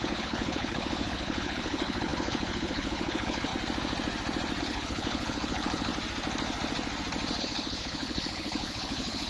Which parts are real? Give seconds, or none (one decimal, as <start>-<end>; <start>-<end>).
3.5-4.6; 5.9-7.4